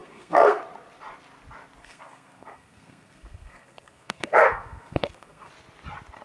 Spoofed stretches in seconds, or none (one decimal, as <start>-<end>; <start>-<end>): 0.0-0.6; 1.8-5.5